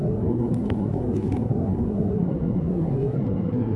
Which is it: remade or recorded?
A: remade